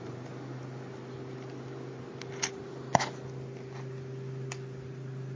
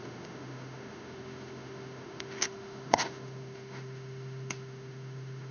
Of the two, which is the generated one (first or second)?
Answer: second